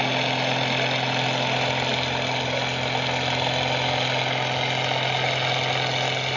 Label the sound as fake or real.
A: real